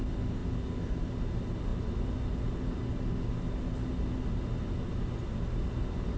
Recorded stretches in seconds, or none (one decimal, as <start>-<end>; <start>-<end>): 0.0-6.2